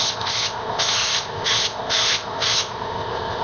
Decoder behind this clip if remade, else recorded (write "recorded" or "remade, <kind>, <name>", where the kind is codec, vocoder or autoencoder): remade, codec, ZipCodec